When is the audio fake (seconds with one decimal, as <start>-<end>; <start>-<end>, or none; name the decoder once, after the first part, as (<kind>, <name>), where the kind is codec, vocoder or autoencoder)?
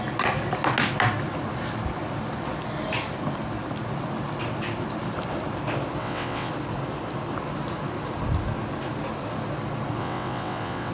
6.0-6.5 (vocoder, WaveNeXt); 10.0-10.9